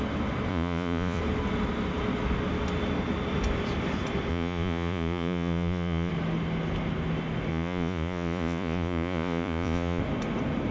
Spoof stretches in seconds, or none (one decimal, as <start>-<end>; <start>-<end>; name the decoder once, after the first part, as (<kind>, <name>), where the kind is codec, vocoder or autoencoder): 0.5-1.2 (vocoder, Vocos); 4.3-6.1; 7.5-10.0